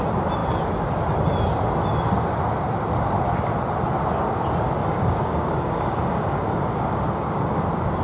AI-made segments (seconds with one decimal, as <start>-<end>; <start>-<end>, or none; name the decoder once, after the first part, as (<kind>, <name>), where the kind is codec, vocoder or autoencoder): 4.8-7.6 (codec, DAC)